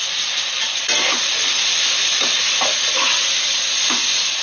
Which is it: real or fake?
real